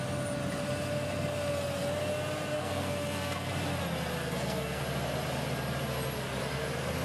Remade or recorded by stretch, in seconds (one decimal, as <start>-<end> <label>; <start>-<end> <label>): 0.0-2.5 recorded; 2.5-3.5 remade; 3.5-4.2 recorded; 4.2-4.8 remade; 4.8-7.0 recorded